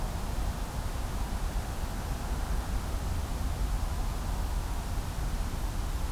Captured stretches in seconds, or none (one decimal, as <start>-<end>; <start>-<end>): 0.0-0.9; 3.4-6.1